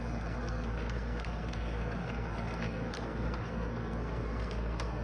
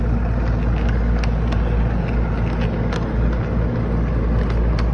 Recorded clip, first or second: second